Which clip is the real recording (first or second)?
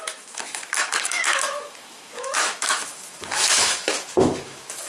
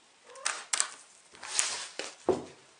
second